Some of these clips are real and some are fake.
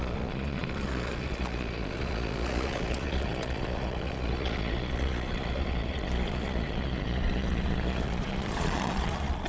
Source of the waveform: fake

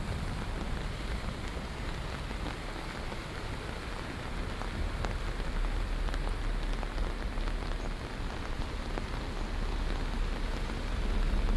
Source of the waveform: real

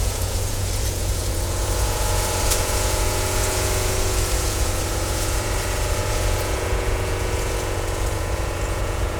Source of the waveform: fake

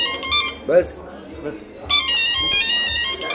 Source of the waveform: real